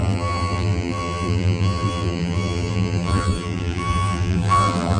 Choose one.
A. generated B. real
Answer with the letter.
A